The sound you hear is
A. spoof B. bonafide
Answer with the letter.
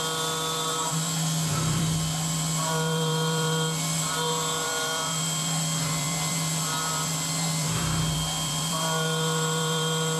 A